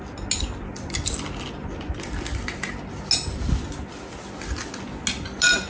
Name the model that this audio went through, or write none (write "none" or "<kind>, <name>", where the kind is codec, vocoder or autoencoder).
none